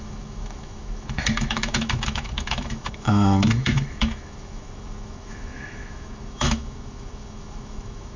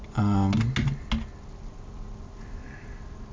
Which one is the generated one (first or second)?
first